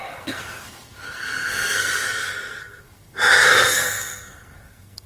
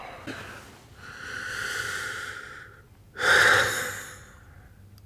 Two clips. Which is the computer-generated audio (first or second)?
first